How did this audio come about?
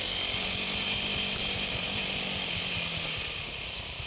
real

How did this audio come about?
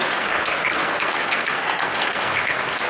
fake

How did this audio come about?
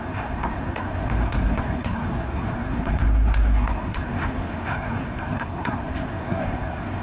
fake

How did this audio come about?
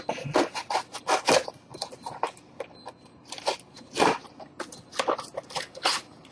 real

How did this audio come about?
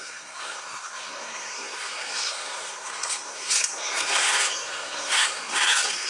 fake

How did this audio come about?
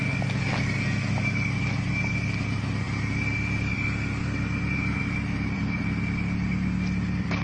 real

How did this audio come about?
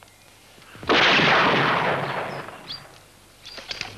real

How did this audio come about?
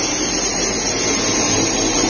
real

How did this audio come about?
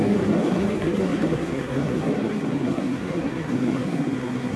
fake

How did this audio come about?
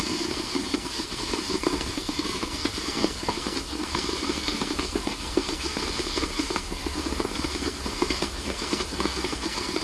fake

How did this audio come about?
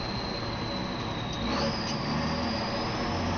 real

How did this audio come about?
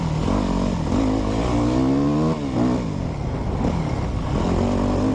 real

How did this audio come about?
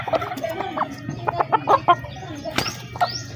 real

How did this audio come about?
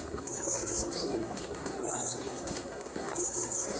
fake